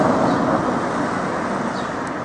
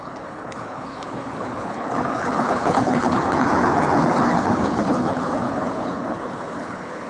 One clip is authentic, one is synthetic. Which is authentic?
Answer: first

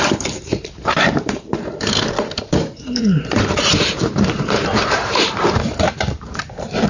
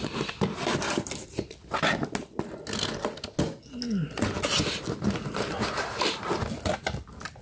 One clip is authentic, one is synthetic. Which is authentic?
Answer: second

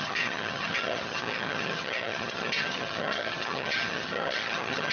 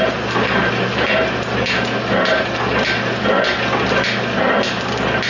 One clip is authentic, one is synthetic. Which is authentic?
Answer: second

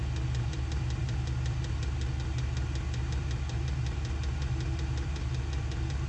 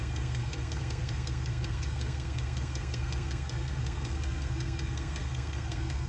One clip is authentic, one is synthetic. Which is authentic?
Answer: first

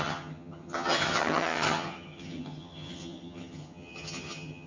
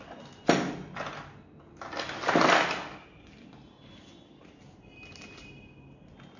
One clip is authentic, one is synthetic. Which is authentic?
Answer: second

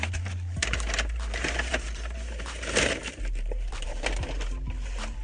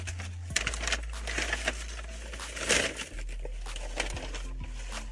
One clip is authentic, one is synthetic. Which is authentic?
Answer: second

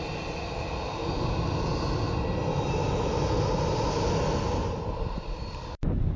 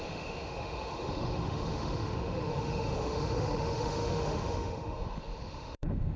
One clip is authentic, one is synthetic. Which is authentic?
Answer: first